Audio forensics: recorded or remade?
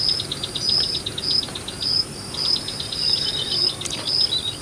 recorded